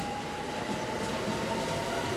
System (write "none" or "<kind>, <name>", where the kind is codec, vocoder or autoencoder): none